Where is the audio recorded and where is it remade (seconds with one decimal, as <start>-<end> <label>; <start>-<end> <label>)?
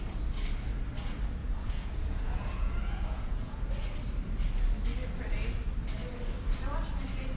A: 0.0-1.4 recorded; 1.4-3.7 remade; 3.7-7.4 recorded